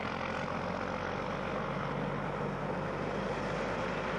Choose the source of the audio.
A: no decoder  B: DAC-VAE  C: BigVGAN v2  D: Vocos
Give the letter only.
A